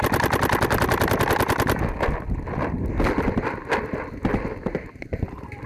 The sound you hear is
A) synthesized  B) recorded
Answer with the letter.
B